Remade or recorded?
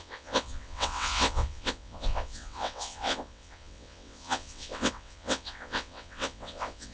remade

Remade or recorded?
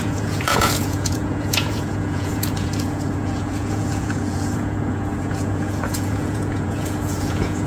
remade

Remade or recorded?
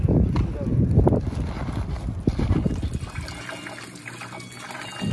recorded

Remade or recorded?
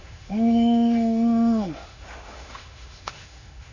remade